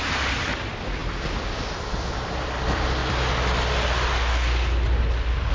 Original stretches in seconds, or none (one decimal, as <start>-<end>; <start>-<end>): 3.0-5.0